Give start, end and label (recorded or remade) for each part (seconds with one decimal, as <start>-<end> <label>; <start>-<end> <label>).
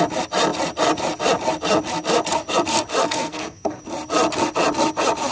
0.0-3.0 recorded; 3.0-3.8 remade; 3.8-5.3 recorded